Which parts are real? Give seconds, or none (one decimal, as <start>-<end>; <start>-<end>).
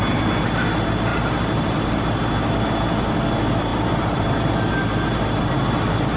0.0-1.1; 2.0-3.7; 4.5-6.2